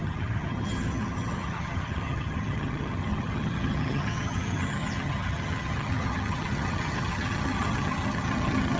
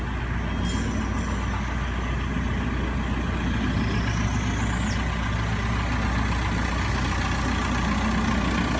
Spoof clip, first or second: first